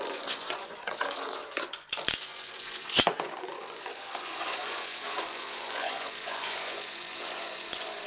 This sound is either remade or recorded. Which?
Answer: remade